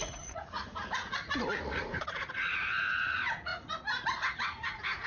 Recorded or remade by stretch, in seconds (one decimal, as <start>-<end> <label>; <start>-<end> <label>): 0.0-3.5 remade; 3.5-4.3 recorded; 4.3-5.1 remade

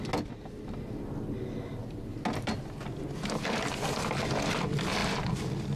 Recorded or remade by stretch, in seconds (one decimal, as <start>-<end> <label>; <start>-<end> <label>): 0.0-5.8 recorded

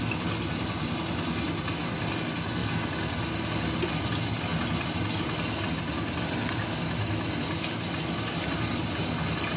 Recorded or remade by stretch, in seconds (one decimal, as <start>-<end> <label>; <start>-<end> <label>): 0.0-9.6 recorded

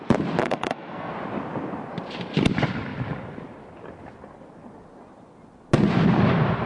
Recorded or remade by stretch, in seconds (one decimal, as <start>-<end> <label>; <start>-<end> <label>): 0.0-0.4 recorded; 0.4-1.1 remade; 1.1-6.7 recorded

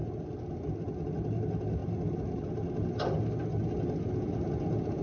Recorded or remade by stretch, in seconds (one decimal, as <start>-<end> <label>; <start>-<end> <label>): 0.0-5.0 recorded